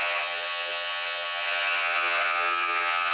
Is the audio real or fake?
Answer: fake